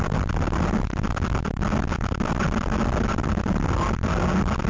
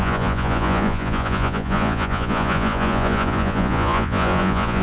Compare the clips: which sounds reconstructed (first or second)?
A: second